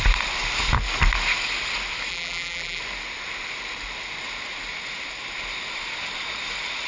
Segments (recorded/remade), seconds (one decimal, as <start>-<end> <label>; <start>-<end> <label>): 0.0-2.1 recorded; 2.1-2.8 remade; 2.8-6.9 recorded